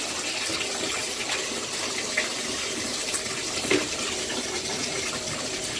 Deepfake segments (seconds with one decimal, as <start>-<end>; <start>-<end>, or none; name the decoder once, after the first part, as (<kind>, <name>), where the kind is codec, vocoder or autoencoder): 1.0-3.4 (vocoder, BigVGAN v2); 3.8-5.0